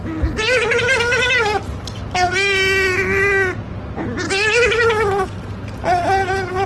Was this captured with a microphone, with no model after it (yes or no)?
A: yes